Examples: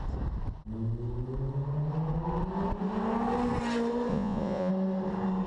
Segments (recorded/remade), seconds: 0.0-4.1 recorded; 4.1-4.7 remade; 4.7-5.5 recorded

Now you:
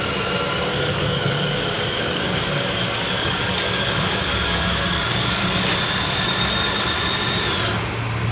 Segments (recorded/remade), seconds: 0.0-0.7 recorded; 0.7-5.7 remade; 5.7-8.3 recorded

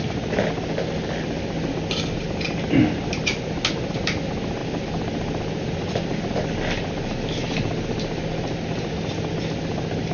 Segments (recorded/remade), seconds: 0.0-10.1 recorded

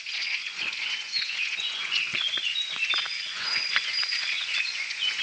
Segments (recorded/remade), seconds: 0.0-5.2 remade

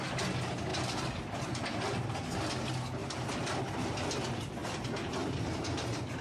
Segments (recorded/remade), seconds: 0.0-4.6 recorded; 4.6-6.2 remade

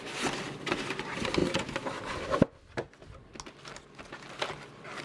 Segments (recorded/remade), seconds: 0.0-5.0 recorded

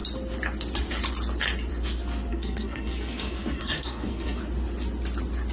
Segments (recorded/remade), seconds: 0.0-2.3 recorded; 2.3-4.4 remade; 4.4-5.5 recorded

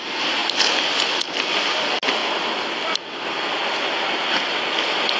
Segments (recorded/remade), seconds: 0.0-5.2 recorded